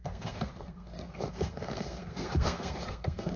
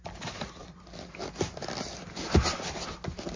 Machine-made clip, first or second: first